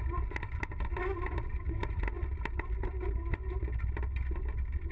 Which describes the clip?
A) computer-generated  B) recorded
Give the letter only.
B